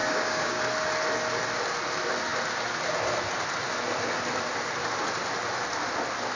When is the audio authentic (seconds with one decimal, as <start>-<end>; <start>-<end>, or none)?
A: 0.6-6.4